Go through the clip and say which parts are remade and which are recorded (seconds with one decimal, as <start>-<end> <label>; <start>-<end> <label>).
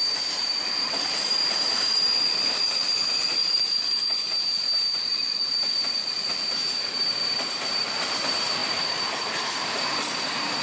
0.0-8.6 remade; 8.6-9.2 recorded; 9.2-10.6 remade